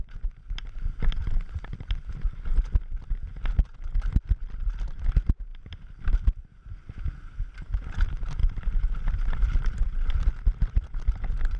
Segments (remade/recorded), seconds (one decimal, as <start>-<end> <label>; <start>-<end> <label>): 0.0-1.2 recorded; 1.2-2.1 remade; 2.1-11.6 recorded